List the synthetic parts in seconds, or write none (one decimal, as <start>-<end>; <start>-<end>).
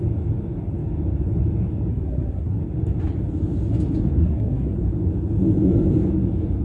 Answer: 1.9-2.6; 4.2-4.8